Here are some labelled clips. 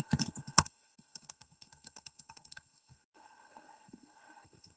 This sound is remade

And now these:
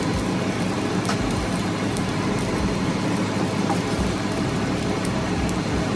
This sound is recorded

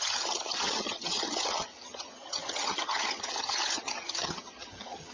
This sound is remade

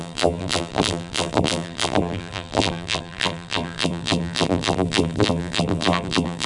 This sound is remade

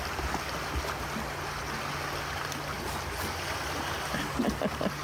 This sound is recorded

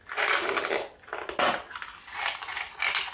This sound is recorded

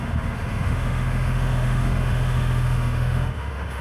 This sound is remade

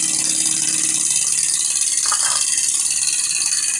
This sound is recorded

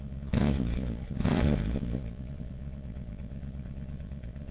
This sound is remade